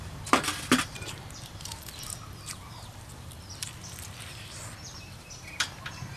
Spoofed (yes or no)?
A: yes